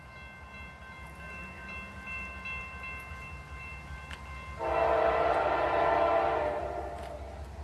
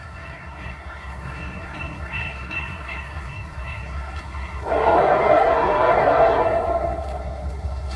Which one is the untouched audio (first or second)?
first